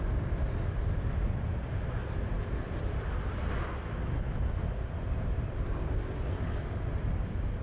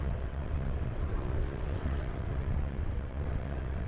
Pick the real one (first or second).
first